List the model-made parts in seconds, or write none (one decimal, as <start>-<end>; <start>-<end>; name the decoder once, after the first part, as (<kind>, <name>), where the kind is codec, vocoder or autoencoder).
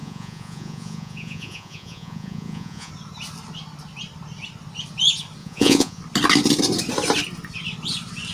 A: 0.0-2.9 (vocoder, Vocos); 5.4-6.0